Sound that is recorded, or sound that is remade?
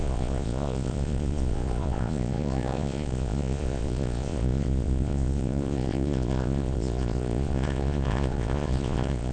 remade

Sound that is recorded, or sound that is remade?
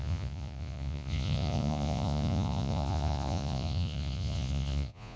remade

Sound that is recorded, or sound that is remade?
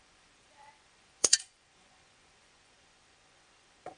remade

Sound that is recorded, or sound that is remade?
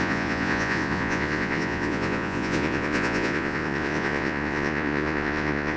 remade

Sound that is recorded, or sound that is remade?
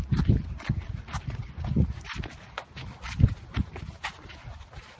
recorded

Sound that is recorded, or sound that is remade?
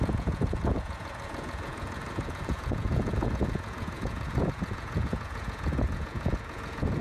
remade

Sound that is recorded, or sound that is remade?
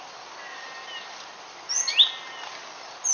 recorded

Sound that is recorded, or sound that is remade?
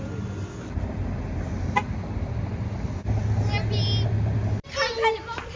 recorded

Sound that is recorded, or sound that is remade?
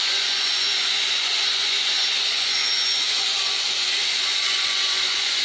remade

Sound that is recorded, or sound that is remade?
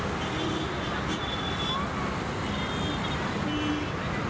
recorded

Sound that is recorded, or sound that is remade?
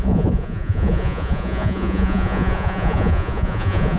remade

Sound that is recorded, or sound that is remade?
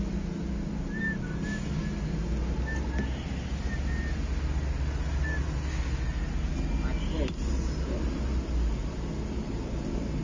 recorded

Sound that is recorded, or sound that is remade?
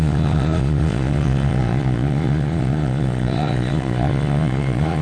remade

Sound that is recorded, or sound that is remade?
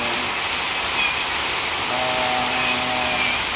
recorded